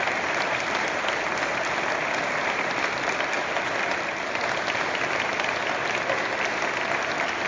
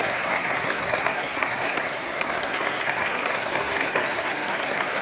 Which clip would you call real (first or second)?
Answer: first